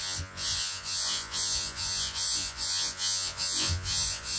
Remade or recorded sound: remade